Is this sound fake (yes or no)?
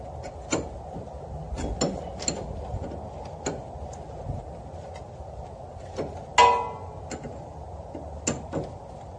no